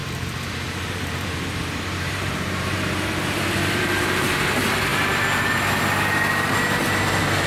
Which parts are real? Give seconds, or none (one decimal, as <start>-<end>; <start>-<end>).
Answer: 4.5-7.5